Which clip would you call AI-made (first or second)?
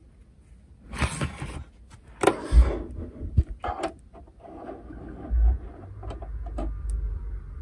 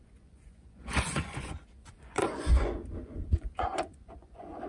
second